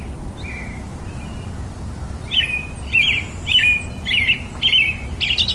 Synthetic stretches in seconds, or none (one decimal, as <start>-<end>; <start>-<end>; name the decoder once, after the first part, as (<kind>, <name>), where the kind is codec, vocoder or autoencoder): none